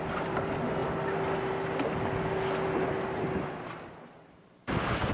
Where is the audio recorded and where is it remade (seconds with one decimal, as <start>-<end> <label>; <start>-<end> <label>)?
0.0-5.1 recorded